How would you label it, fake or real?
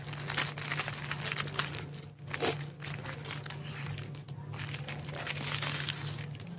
real